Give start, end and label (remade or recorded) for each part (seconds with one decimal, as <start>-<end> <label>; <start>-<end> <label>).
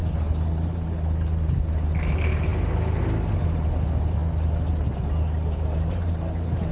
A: 0.0-6.7 recorded